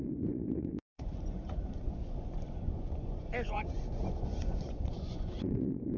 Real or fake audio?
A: fake